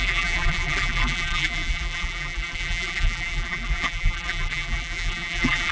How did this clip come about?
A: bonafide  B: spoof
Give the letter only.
B